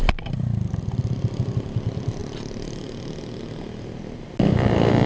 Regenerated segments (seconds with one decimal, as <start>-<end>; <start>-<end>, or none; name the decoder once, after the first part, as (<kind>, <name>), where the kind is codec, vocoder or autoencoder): none